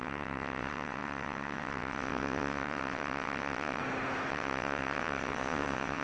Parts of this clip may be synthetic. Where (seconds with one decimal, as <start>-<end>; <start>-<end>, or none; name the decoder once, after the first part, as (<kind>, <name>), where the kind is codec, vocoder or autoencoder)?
0.0-3.8 (vocoder, WaveNeXt); 4.3-6.0